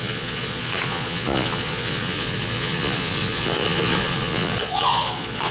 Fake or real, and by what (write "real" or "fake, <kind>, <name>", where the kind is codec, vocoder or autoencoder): fake, vocoder, Vocos